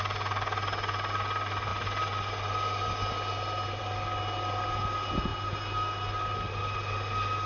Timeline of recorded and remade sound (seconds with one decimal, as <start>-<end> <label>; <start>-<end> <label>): 0.0-7.5 recorded